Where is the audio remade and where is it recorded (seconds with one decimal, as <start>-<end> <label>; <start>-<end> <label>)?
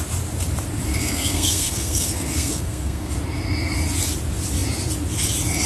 0.0-0.9 recorded; 0.9-3.1 remade; 3.1-5.7 recorded